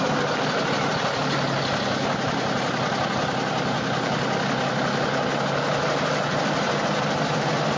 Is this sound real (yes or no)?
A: yes